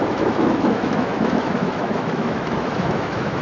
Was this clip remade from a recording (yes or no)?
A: yes